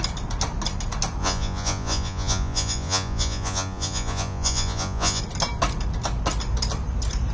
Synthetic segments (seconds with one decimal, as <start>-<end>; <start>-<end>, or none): 1.2-5.2